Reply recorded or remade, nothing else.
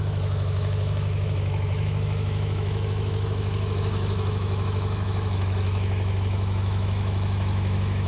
remade